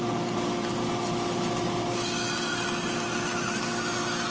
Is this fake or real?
real